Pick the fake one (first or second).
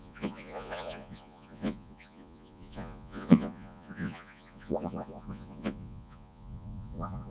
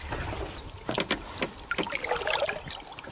first